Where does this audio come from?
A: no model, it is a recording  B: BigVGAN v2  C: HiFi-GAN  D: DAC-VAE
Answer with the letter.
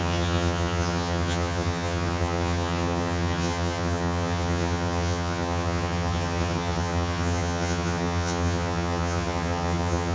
C